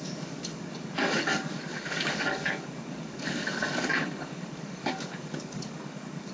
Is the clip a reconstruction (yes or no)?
yes